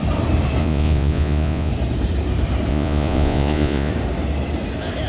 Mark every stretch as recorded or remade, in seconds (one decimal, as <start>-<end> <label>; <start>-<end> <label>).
0.0-0.6 recorded; 0.6-1.7 remade; 1.7-2.7 recorded; 2.7-3.9 remade; 3.9-5.1 recorded